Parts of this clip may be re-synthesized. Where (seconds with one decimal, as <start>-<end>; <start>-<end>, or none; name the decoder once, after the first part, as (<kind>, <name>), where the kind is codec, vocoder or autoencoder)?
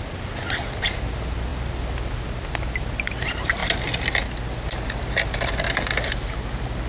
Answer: none